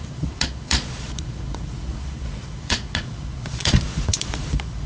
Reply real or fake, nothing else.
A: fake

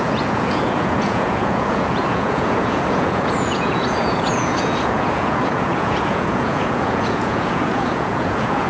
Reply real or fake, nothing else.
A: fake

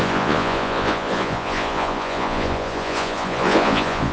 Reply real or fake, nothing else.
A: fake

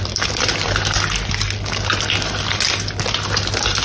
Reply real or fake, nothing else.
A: real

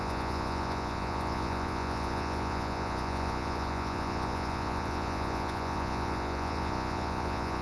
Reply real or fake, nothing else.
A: fake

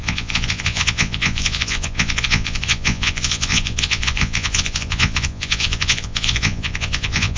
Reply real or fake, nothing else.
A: fake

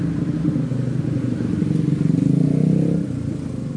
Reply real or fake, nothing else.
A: real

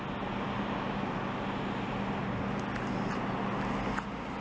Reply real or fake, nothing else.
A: real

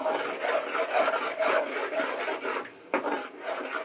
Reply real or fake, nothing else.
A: real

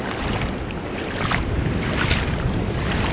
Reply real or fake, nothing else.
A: real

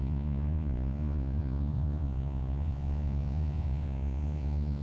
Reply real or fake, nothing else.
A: fake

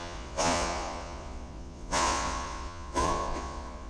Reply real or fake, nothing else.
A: fake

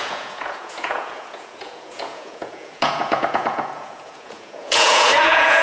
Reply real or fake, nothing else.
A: fake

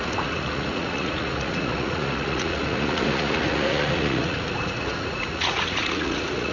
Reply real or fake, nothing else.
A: fake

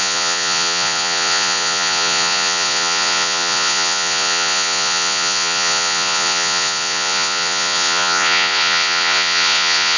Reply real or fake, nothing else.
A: fake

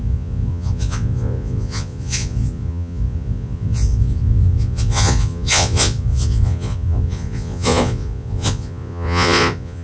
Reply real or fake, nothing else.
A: fake